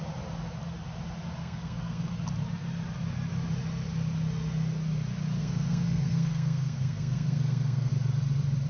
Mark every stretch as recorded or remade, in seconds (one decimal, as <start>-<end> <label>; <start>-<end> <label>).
0.0-1.4 recorded; 1.4-2.1 remade; 2.1-5.4 recorded; 5.4-7.9 remade; 7.9-8.7 recorded